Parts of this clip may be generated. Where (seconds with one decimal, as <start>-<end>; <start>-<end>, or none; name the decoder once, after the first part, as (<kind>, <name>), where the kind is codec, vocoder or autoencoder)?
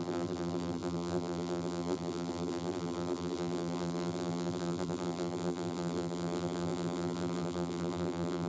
0.0-8.5 (vocoder, BigVGAN v2)